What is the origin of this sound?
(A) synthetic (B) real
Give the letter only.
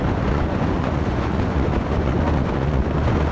A